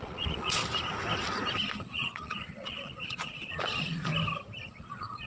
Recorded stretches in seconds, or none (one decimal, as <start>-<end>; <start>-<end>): 0.6-1.8; 4.1-4.7